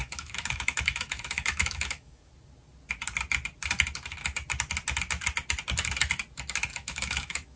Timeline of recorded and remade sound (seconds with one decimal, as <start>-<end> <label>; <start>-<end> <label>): 0.0-2.3 remade; 2.3-6.7 recorded; 6.7-7.6 remade